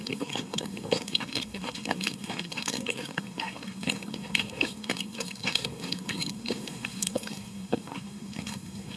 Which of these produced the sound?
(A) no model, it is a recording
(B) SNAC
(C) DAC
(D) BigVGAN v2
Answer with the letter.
B